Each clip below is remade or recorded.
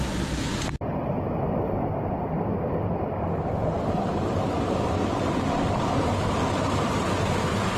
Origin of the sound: recorded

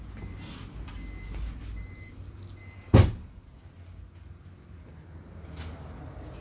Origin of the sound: recorded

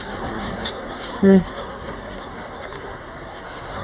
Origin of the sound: remade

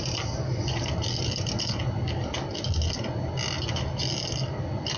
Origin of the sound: recorded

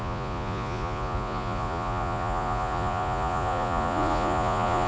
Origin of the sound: remade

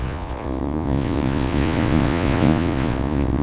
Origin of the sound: remade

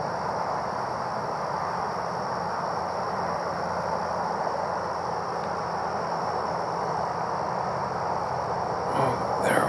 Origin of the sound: recorded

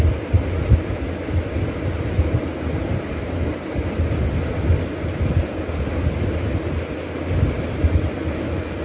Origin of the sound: recorded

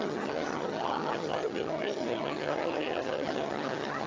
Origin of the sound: remade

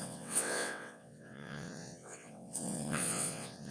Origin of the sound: remade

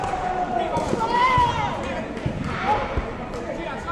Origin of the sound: recorded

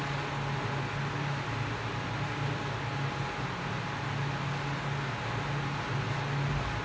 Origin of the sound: recorded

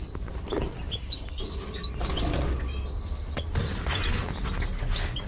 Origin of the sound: recorded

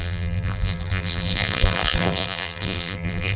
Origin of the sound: remade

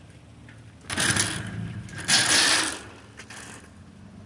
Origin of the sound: recorded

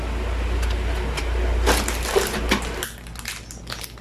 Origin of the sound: recorded